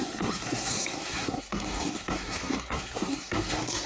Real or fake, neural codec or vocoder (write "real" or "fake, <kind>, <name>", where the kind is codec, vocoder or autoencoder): fake, codec, SNAC